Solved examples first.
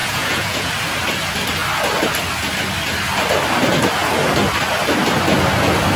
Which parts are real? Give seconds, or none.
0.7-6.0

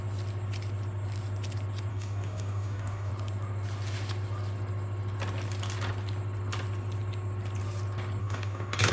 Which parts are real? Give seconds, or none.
0.0-1.9; 3.1-8.2

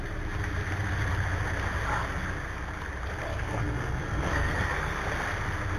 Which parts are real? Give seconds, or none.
0.0-3.3; 5.0-5.8

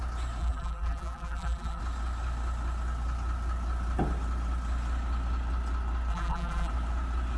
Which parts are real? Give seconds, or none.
0.0-0.4; 1.8-6.1; 6.7-7.4

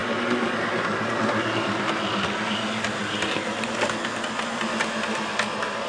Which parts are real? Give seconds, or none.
0.0-5.9

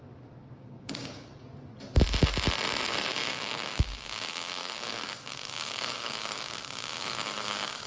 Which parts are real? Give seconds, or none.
0.0-0.4; 1.3-3.1